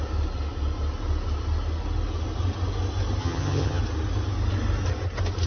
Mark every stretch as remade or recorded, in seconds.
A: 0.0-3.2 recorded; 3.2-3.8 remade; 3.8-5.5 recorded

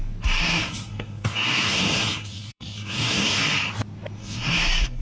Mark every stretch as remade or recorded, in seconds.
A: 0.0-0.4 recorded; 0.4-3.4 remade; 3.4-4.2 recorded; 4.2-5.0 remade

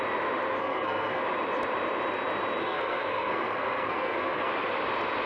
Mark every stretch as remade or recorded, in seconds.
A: 0.0-0.6 recorded; 0.6-1.2 remade; 1.2-2.6 recorded; 2.6-4.5 remade; 4.5-5.3 recorded